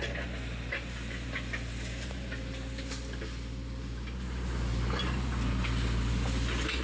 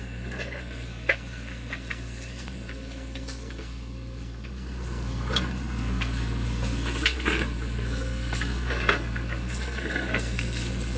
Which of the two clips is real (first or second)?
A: first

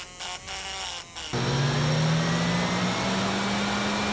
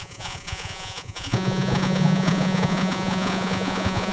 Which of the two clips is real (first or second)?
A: first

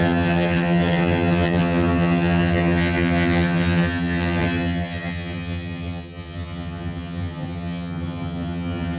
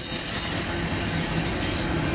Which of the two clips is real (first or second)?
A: second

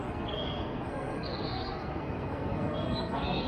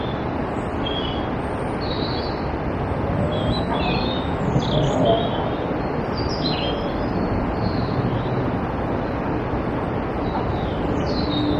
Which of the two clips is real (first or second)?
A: second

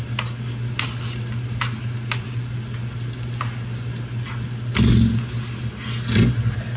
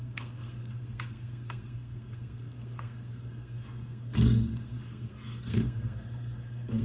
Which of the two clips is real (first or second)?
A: first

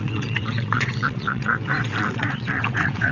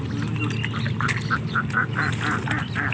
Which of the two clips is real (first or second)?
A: second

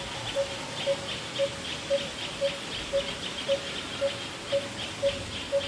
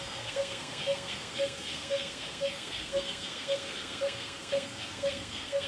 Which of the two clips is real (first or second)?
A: first